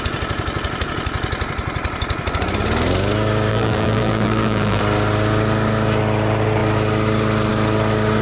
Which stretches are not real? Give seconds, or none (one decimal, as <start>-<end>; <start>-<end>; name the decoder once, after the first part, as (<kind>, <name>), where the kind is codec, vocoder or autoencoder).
3.5-4.8 (vocoder, BigVGAN v2)